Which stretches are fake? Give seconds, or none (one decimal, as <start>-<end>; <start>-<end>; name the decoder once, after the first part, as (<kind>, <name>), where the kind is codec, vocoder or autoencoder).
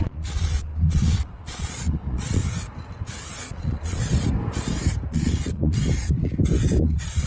0.0-2.4 (vocoder, Vocos); 3.3-4.0; 5.1-5.8; 6.8-7.3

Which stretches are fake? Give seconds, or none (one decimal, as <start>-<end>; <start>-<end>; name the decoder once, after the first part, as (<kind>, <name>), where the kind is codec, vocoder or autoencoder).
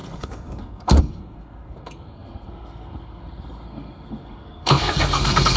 0.0-5.6 (codec, SNAC)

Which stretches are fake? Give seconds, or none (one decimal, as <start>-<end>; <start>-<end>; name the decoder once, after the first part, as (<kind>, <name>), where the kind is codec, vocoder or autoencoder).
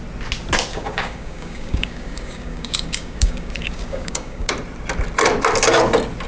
0.7-4.5 (codec, DAC)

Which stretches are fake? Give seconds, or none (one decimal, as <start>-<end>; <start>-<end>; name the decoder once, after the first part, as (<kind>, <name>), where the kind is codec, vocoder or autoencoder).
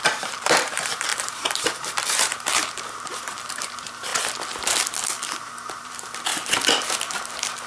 0.0-4.1 (vocoder, BigVGAN v2); 5.2-6.3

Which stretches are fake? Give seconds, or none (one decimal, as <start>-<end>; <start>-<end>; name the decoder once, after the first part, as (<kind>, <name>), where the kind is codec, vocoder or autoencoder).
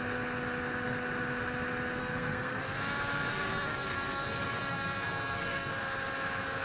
2.0-2.6 (codec, SNAC); 3.3-5.8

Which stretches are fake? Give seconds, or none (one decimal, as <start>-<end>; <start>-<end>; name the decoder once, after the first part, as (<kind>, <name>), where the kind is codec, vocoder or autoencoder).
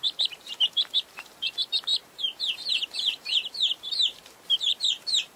0.0-5.4 (vocoder, BigVGAN v2)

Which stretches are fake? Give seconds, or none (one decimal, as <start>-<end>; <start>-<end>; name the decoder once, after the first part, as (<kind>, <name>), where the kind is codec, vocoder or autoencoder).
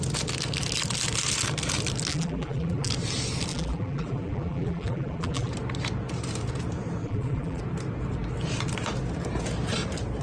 2.1-2.9 (vocoder, BigVGAN v2); 3.5-5.5; 7.0-7.6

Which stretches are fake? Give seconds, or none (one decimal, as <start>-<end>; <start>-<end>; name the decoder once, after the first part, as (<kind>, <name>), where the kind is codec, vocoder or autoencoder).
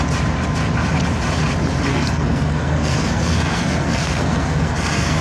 1.9-5.2 (codec, SNAC)